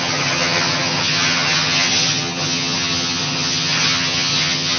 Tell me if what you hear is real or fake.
fake